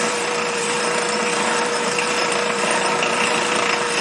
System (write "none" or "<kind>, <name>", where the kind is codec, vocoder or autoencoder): vocoder, BigVGAN v2